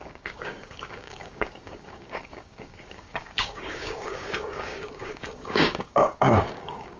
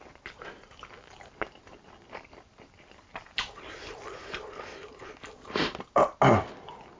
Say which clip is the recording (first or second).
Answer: second